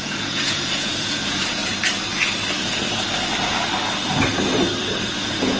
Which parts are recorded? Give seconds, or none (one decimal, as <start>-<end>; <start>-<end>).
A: 1.6-5.0